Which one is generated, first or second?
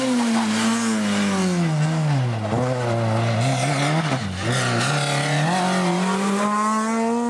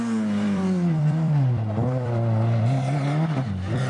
second